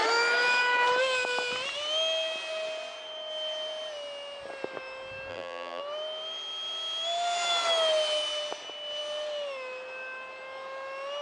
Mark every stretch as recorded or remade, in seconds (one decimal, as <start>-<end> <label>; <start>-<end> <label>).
0.0-5.3 recorded; 5.3-5.8 remade; 5.8-11.2 recorded